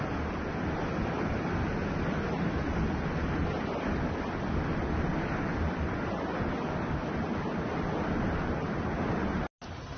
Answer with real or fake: real